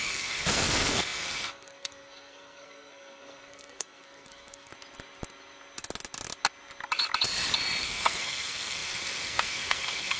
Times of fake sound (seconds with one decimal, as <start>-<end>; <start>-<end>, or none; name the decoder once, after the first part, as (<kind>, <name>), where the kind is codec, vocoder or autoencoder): 0.0-4.7 (codec, SNAC); 7.8-10.2